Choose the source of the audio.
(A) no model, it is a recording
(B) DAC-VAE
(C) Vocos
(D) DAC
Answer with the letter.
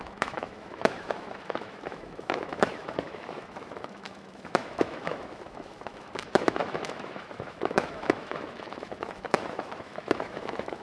B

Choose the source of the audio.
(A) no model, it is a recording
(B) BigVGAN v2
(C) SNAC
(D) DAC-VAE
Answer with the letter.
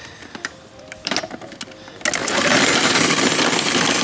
A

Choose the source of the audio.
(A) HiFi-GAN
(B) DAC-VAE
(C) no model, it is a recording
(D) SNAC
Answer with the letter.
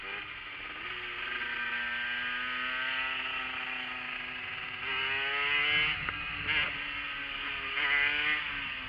C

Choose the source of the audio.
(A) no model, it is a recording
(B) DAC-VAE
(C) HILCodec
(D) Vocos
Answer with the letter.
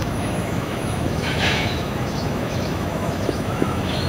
B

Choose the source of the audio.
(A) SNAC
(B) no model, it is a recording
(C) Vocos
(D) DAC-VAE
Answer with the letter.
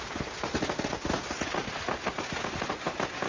B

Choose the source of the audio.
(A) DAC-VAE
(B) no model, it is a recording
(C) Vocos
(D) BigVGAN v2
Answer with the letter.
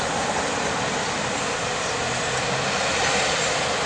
B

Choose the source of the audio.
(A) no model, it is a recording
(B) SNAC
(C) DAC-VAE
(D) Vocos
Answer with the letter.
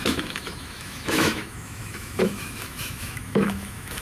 C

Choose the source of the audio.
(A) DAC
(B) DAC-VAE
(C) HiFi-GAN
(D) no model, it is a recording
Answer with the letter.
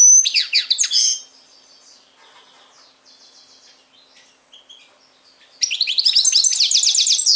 D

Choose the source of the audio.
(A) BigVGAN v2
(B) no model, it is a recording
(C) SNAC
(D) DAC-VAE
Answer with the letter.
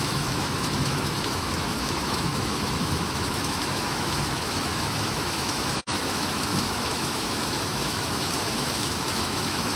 D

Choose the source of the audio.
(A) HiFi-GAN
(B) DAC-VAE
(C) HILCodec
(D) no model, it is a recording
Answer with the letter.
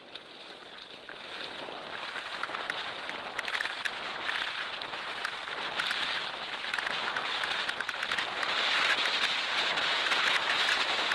D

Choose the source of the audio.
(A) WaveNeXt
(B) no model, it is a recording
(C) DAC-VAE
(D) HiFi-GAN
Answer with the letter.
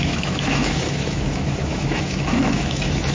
C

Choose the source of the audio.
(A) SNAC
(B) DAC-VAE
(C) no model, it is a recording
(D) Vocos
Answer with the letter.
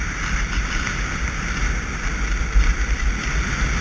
C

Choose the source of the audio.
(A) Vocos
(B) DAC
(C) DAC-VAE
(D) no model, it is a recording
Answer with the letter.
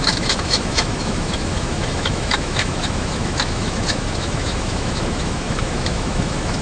C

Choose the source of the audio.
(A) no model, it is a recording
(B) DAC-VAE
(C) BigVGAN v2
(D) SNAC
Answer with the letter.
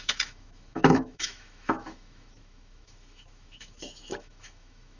B